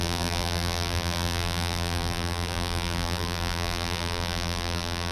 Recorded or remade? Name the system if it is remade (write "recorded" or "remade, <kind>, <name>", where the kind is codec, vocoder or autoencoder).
remade, vocoder, BigVGAN v2